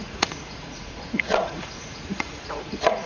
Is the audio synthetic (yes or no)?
yes